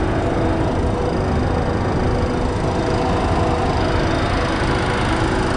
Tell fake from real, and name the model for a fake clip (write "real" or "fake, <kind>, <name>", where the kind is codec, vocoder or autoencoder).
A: real